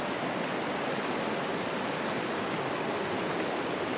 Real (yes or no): yes